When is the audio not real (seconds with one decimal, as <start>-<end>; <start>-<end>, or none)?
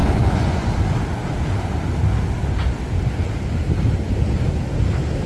0.0-0.7